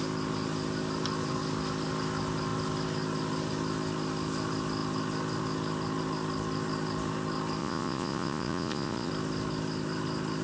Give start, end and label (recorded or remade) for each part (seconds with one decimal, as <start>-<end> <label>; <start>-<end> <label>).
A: 0.0-7.6 recorded; 7.6-9.1 remade; 9.1-10.4 recorded

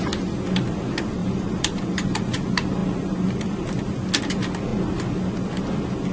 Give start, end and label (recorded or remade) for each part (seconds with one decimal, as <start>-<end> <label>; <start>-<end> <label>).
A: 0.0-1.2 recorded; 1.2-2.2 remade; 2.2-6.1 recorded

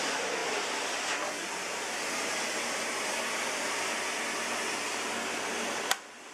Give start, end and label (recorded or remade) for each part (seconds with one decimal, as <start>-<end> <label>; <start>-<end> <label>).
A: 0.0-6.3 recorded

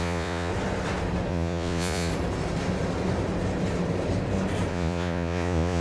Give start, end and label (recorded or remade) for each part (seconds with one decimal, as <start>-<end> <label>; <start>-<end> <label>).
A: 0.0-0.5 remade; 0.5-1.3 recorded; 1.3-2.1 remade; 2.1-4.7 recorded; 4.7-5.8 remade

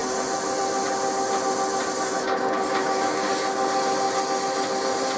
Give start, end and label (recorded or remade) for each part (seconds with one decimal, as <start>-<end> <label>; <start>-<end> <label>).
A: 0.0-2.8 recorded; 2.8-3.3 remade; 3.3-5.2 recorded

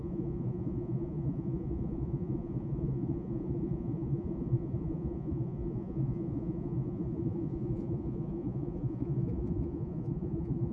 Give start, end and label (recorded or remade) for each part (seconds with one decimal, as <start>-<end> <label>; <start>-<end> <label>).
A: 0.0-10.7 remade